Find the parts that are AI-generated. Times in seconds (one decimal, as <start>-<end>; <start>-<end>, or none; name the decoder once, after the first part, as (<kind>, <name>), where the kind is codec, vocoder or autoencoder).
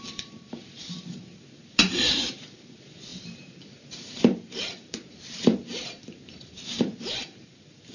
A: 0.0-7.9 (vocoder, BigVGAN v2)